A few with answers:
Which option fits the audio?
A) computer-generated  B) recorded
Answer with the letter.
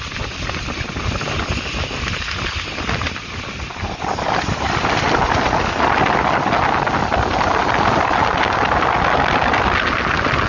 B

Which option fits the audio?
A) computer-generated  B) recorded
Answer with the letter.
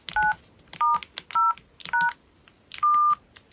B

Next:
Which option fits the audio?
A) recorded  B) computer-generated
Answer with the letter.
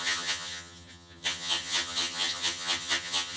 B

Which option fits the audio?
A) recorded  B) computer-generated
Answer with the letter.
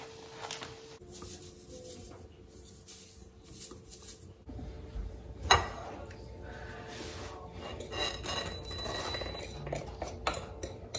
A